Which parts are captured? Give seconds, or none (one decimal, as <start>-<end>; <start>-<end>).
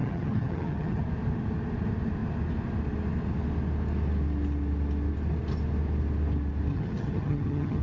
1.0-6.7